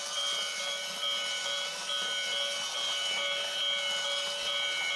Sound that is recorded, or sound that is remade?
recorded